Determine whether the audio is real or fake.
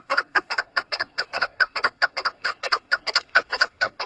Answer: fake